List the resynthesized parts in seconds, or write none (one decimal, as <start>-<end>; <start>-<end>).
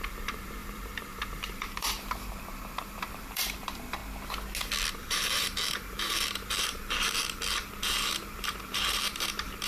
0.0-4.0; 4.9-9.7